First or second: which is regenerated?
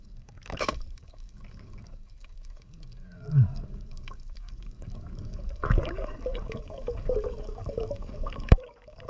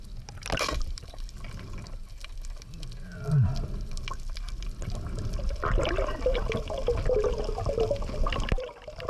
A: first